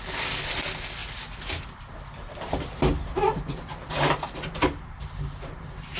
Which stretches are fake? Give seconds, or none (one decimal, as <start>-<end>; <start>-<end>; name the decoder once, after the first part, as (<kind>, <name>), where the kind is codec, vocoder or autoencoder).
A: 1.0-3.5 (vocoder, BigVGAN v2)